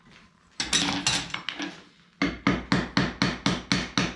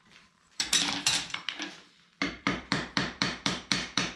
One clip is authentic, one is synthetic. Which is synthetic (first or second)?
second